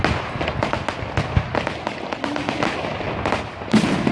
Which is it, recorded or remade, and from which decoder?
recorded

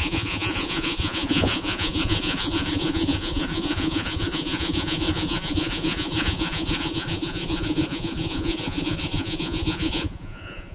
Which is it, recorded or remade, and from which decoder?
remade, vocoder, Vocos